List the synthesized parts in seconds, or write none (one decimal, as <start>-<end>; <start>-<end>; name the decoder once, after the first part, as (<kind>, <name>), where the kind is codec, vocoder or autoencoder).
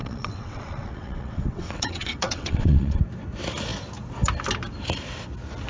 0.0-3.0 (vocoder, WaveNeXt)